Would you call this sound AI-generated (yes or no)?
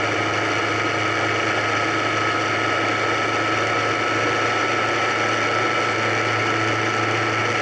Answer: no